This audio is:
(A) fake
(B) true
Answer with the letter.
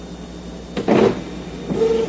B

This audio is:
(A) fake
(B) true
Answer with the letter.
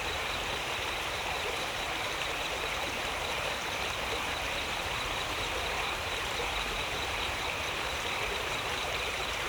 A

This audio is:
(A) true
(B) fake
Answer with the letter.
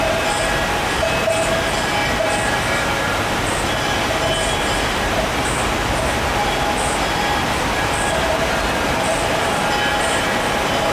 A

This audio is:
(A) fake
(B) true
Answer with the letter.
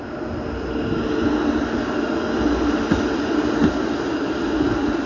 B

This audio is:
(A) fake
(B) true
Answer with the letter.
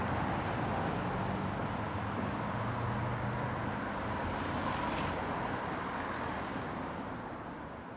B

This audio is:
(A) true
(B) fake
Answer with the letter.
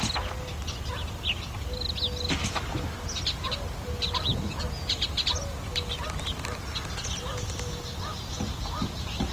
A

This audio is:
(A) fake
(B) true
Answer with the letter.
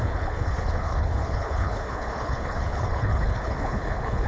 A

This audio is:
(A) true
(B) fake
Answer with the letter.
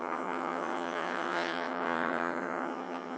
B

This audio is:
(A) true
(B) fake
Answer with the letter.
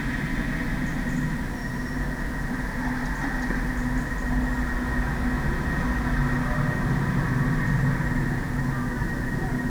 A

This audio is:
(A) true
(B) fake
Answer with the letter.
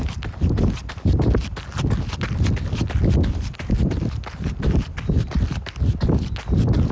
A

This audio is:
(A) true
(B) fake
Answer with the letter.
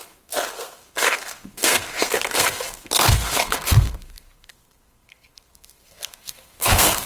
B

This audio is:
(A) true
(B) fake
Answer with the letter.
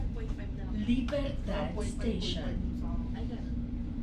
A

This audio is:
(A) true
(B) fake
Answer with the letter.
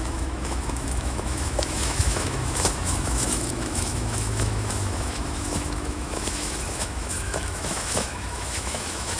B